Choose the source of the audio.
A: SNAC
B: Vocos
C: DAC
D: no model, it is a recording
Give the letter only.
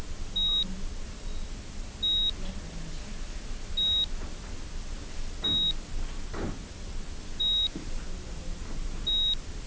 D